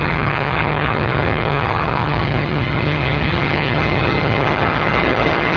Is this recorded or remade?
remade